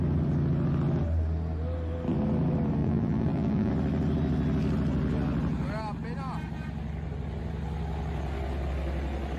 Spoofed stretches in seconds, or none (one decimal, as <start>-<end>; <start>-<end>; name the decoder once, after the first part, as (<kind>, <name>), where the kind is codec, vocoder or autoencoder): 2.8-3.7 (vocoder, BigVGAN v2)